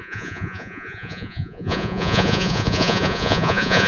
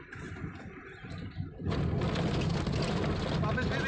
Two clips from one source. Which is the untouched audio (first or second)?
second